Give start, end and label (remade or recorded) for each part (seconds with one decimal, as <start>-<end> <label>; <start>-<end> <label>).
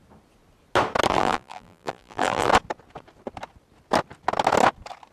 0.0-1.1 recorded; 1.1-2.5 remade; 2.5-5.1 recorded